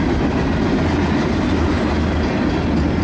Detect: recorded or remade recorded